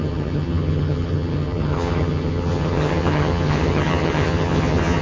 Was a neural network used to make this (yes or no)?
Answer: yes